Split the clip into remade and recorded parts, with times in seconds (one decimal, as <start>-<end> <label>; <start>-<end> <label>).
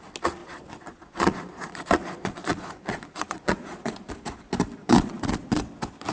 0.0-0.4 recorded; 0.4-4.1 remade; 4.1-4.8 recorded; 4.8-5.6 remade; 5.6-6.1 recorded